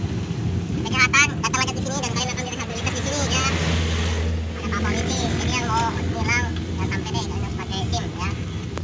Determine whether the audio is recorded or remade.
recorded